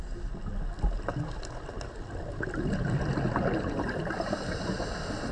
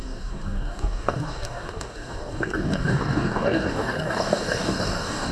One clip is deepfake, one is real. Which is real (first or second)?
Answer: first